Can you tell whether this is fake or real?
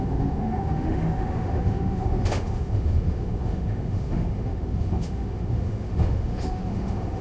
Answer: fake